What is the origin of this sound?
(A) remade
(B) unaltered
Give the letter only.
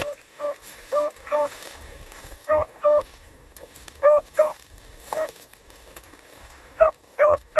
A